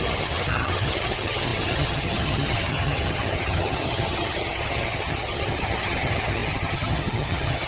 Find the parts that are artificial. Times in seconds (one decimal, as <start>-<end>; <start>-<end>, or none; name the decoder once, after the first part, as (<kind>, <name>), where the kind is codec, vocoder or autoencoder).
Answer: 0.0-7.7 (vocoder, HiFi-GAN)